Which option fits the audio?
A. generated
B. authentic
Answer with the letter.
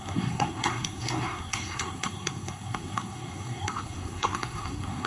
A